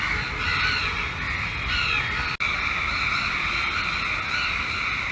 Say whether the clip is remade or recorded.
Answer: recorded